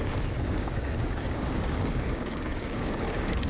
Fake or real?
fake